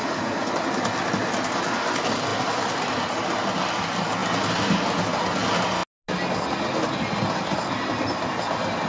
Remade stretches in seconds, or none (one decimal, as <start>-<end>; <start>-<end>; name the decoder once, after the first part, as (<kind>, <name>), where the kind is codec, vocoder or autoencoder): 0.0-0.5 (vocoder, Vocos)